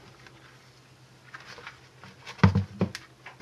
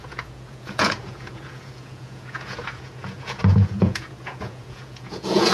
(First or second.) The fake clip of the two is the second